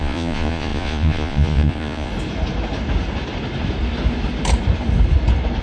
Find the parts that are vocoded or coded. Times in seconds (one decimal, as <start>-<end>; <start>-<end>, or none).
0.0-2.1